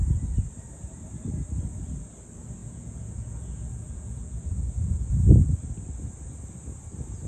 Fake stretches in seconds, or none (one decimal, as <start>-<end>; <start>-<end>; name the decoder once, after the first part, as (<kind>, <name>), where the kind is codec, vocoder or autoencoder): 2.6-5.1 (vocoder, Vocos)